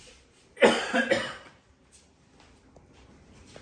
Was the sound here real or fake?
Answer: real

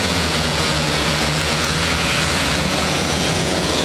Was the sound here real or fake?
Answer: fake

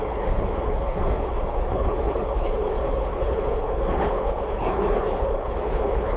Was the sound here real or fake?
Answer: fake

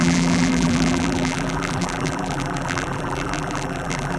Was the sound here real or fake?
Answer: fake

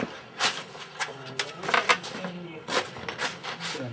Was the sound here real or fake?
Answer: real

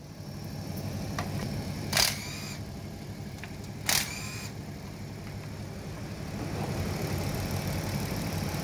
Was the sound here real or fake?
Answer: fake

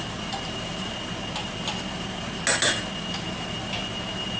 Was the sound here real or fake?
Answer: real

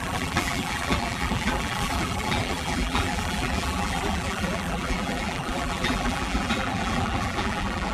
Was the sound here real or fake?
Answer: fake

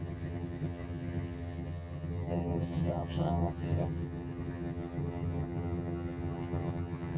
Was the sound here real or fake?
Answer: fake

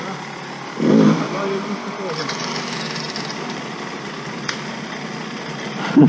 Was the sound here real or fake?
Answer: real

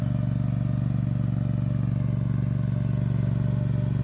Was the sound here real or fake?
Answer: real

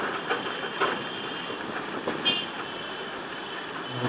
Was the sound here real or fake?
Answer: real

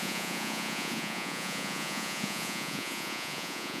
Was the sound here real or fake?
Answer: fake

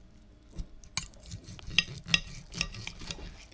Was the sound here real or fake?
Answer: real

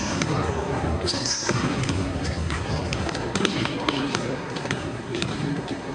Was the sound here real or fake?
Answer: fake